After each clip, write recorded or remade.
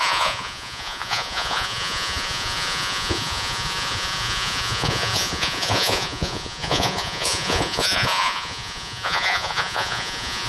remade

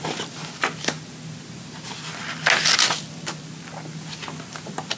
recorded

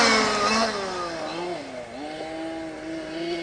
recorded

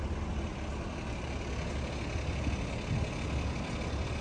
recorded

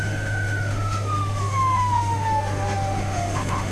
remade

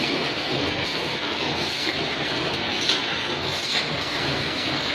remade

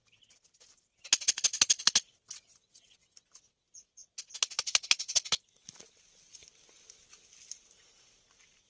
recorded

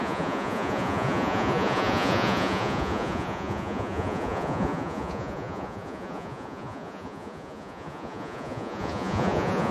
remade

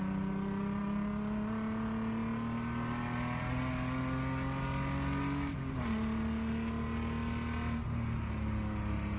recorded